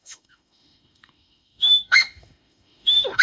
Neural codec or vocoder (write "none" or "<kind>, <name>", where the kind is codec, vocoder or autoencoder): autoencoder, DAC-VAE